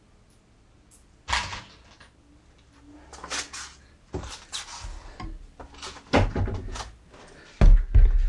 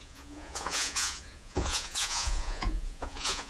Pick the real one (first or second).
first